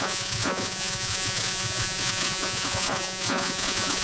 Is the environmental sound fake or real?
fake